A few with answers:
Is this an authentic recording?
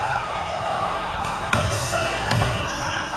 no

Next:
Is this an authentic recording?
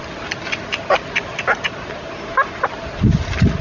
yes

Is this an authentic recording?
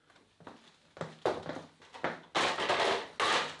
yes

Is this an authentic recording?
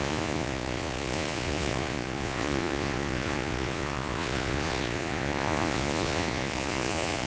no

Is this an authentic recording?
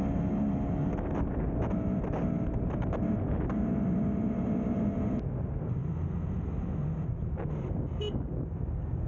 yes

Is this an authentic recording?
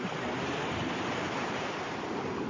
no